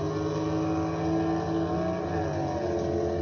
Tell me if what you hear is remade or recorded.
recorded